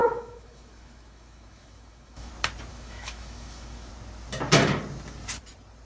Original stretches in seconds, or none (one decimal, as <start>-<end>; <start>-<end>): 2.3-2.7; 3.9-5.8